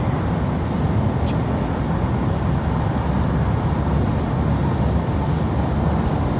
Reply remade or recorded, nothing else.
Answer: recorded